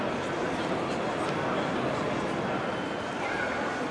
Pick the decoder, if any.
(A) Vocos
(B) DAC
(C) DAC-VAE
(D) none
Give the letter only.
D